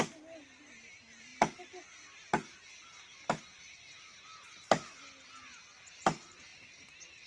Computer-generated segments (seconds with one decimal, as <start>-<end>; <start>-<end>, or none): none

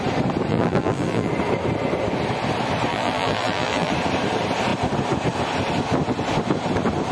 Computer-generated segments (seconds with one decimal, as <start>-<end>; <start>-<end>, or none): 0.5-1.3; 2.9-3.9

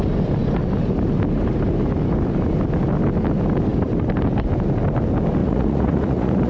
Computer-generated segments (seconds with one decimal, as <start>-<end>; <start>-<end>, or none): 5.4-6.5

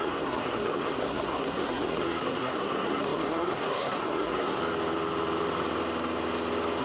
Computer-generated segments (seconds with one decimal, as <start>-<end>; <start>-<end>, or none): 0.0-4.6